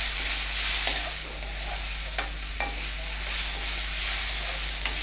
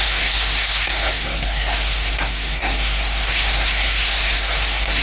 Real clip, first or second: first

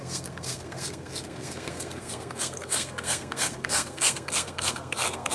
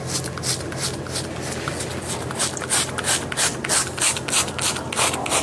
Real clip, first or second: second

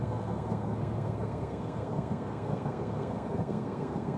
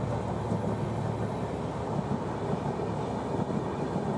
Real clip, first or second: second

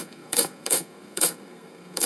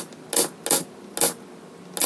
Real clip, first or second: second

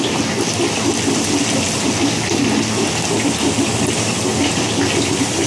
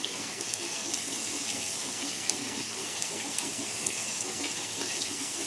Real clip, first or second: first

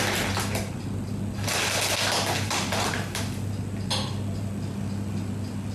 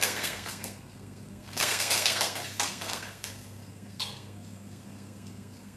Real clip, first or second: first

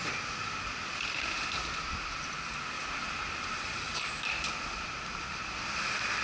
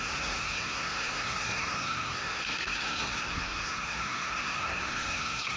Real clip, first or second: first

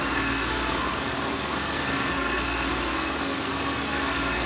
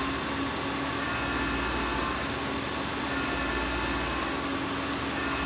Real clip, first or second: second